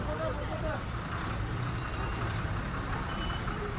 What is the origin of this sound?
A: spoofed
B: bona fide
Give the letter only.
A